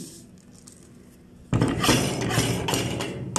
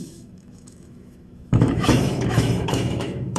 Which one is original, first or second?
first